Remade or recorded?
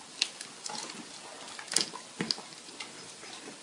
recorded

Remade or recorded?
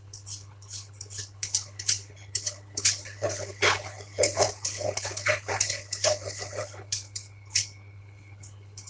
remade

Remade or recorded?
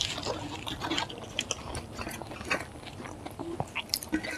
recorded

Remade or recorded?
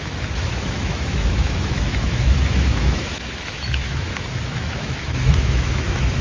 remade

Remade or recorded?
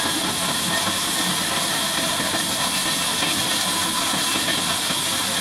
recorded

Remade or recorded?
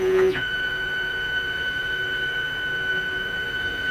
remade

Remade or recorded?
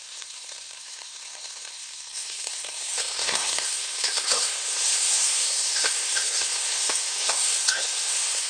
remade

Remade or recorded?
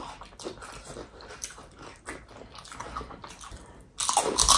recorded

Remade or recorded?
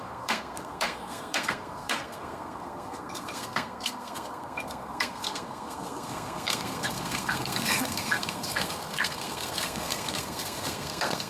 remade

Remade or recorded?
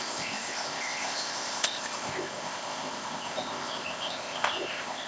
remade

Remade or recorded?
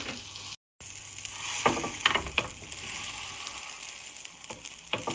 recorded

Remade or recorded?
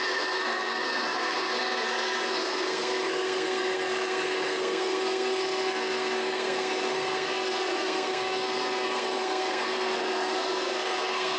remade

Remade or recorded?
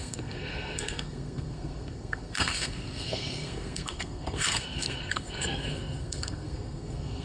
remade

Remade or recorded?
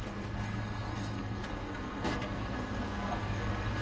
remade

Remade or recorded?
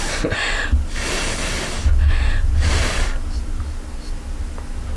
recorded